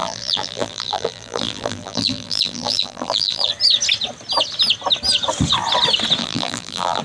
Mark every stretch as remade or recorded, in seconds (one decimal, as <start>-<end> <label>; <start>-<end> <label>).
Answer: 0.0-3.5 remade; 3.5-6.2 recorded; 6.2-7.0 remade

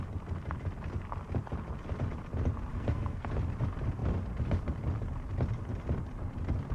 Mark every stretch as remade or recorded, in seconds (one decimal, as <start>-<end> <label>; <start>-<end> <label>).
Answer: 0.0-2.7 recorded; 2.7-3.3 remade; 3.3-6.7 recorded

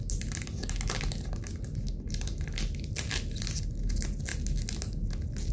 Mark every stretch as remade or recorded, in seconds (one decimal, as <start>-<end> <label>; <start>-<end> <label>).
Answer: 0.0-5.5 recorded

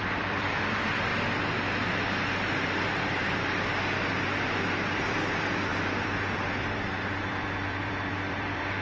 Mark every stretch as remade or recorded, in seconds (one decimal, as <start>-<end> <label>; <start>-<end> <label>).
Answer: 0.0-1.1 remade; 1.1-5.0 recorded; 5.0-8.8 remade

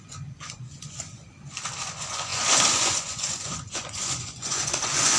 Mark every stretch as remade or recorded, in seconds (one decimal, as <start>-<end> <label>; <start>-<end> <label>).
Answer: 0.0-1.2 remade; 1.2-1.8 recorded; 1.8-5.2 remade

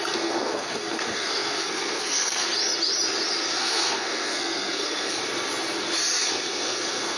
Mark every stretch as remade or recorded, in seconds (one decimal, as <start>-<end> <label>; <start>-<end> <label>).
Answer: 0.0-2.5 remade; 2.5-3.5 recorded; 3.5-5.2 remade; 5.2-6.2 recorded; 6.2-7.2 remade

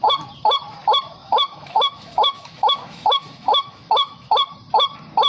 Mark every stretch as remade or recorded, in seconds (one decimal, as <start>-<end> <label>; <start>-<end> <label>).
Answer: 0.0-1.2 recorded; 1.2-4.3 remade; 4.3-5.3 recorded